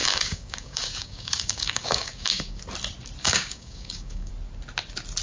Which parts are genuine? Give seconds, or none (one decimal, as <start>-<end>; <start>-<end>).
2.6-3.2; 4.3-5.2

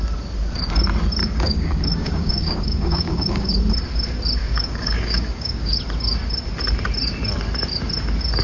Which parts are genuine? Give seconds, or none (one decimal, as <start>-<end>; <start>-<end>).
0.0-1.2; 3.5-4.4; 5.8-8.4

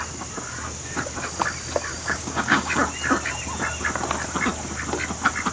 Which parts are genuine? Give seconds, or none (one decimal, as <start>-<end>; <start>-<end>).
0.0-1.9; 2.7-5.5

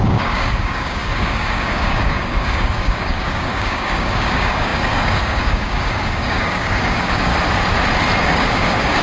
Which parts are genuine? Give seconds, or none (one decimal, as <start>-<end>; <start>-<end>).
7.3-8.2